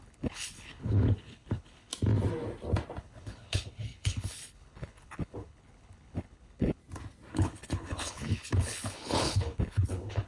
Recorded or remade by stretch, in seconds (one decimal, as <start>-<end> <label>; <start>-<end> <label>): 0.0-1.9 remade; 1.9-3.0 recorded; 3.0-6.8 remade; 6.8-7.3 recorded; 7.3-10.3 remade